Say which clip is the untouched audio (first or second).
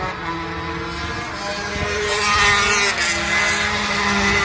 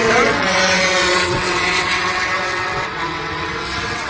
first